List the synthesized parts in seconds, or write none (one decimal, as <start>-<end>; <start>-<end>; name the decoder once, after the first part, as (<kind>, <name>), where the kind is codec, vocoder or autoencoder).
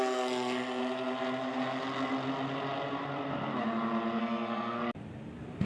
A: 0.0-0.8 (codec, SNAC); 4.2-4.8